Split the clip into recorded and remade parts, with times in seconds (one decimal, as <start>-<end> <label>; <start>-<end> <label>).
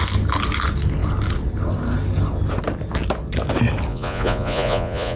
0.0-3.9 recorded; 3.9-5.2 remade